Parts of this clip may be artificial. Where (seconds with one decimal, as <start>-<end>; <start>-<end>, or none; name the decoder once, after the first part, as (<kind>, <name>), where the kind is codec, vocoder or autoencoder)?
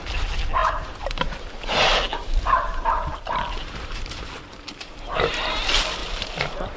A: 0.6-1.2 (vocoder, BigVGAN v2); 2.1-4.5; 6.0-6.8